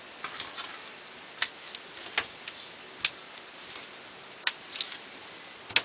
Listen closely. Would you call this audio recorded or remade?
recorded